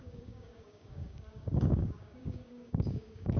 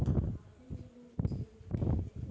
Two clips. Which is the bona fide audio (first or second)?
second